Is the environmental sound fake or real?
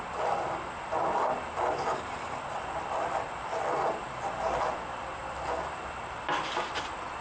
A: real